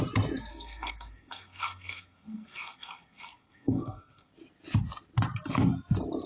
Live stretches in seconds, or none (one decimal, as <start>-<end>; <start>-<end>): 0.0-0.5; 4.3-6.3